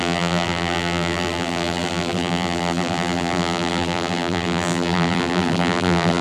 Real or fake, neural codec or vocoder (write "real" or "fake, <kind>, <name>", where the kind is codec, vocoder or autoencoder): fake, vocoder, BigVGAN v2